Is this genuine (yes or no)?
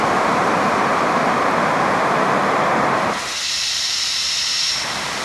no